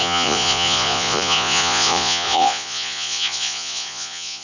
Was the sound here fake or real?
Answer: fake